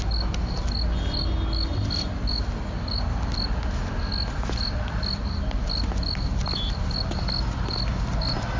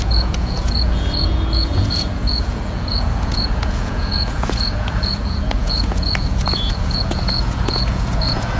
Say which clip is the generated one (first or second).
second